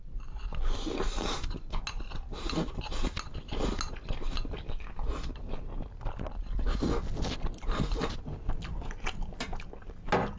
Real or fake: real